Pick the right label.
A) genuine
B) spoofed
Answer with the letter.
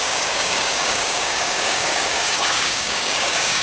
B